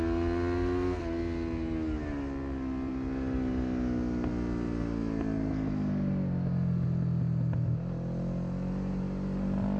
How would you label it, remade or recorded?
recorded